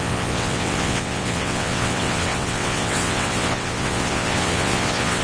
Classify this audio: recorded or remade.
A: remade